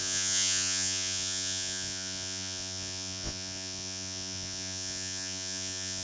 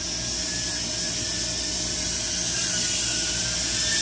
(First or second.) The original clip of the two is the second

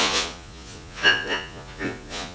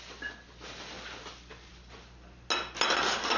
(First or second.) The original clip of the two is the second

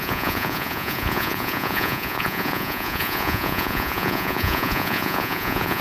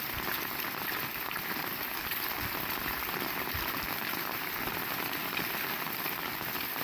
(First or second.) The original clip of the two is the second